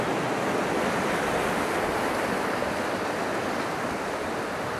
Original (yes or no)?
yes